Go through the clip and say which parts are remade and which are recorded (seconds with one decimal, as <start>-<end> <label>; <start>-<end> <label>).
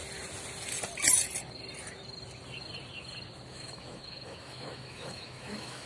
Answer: 0.0-3.5 recorded; 3.5-5.9 remade